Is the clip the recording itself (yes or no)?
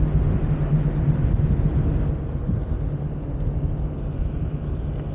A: yes